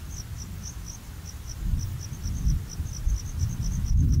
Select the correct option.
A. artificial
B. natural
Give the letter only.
B